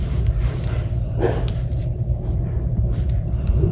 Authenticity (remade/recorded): remade